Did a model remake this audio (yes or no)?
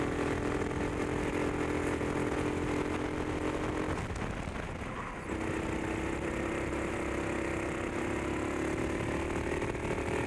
no